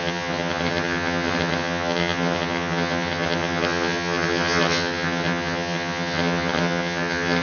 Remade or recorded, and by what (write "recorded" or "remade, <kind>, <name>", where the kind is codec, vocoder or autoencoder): remade, vocoder, HiFi-GAN